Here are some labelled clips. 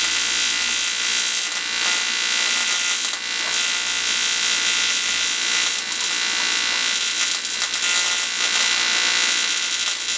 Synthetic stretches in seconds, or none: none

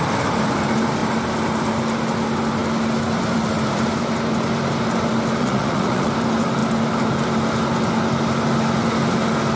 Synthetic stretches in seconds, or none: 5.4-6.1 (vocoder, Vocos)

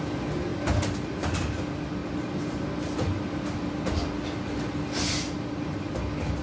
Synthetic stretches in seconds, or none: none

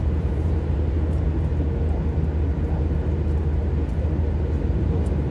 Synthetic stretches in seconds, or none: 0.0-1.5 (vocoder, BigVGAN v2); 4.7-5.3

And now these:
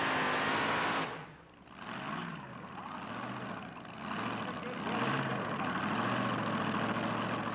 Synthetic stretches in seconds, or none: none

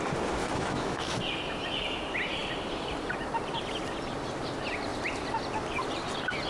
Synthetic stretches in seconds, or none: 0.4-1.2 (autoencoder, DAC-VAE)

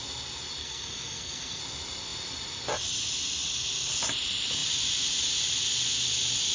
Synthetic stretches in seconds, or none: 0.6-1.6 (codec, SNAC)

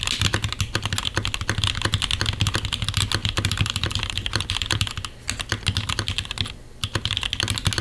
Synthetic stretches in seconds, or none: 3.2-4.8 (vocoder, BigVGAN v2)